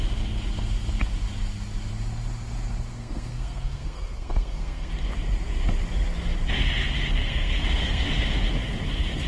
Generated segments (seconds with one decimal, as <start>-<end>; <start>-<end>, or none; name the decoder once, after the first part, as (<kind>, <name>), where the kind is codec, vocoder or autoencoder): 2.9-4.9 (codec, SNAC); 7.2-8.1